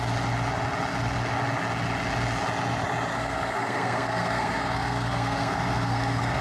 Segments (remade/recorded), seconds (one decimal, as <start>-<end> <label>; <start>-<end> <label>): 0.0-3.1 recorded; 3.1-6.4 remade